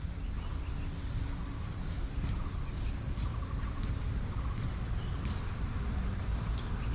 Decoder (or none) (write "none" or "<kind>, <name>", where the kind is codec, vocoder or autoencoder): none